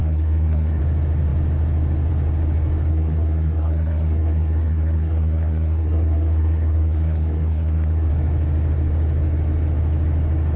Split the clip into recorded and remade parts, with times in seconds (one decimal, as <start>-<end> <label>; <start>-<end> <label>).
0.0-0.8 remade; 0.8-2.9 recorded; 2.9-8.1 remade; 8.1-10.6 recorded